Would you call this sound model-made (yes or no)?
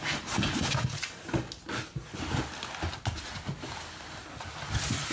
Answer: no